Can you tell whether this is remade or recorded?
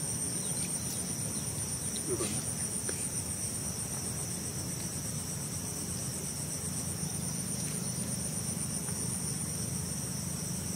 recorded